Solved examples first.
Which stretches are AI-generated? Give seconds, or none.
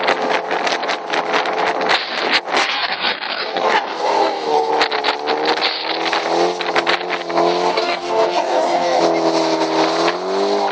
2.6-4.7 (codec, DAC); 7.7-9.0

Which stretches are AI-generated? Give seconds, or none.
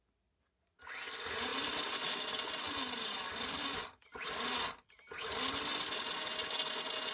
1.5-5.4 (vocoder, BigVGAN v2)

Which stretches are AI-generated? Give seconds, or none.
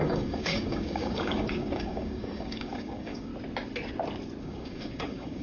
0.0-3.3 (codec, DAC); 4.4-5.4